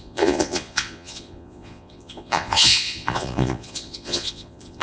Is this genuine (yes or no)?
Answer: no